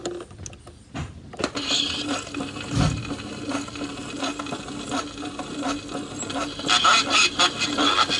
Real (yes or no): yes